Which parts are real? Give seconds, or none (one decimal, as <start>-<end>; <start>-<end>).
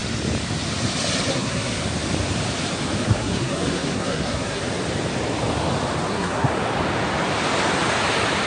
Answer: 0.0-1.3; 1.8-3.0; 4.6-6.1; 6.5-8.5